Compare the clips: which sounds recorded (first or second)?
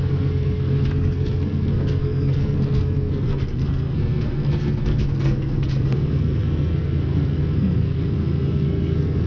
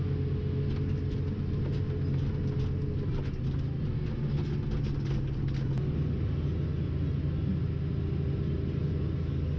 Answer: second